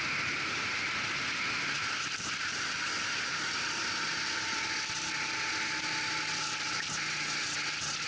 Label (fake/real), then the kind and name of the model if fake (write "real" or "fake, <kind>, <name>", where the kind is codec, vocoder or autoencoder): real